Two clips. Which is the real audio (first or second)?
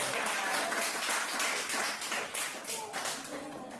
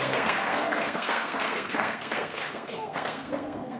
first